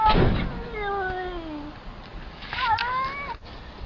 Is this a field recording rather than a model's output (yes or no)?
yes